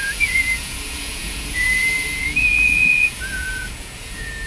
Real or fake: fake